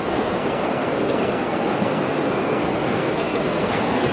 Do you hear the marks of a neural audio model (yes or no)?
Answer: yes